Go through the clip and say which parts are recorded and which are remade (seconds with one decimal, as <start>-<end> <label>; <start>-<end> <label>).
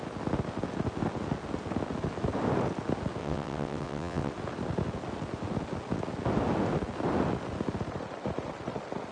0.0-3.2 recorded; 3.2-4.3 remade; 4.3-9.1 recorded